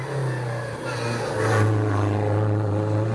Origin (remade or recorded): recorded